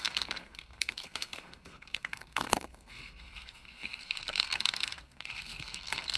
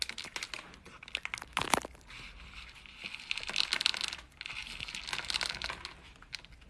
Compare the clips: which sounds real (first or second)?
second